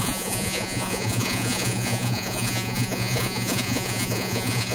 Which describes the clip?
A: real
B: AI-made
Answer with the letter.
B